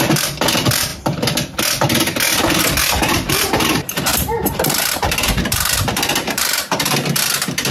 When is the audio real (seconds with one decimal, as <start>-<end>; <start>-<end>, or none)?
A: 0.9-3.1